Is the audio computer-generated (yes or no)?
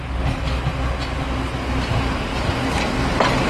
no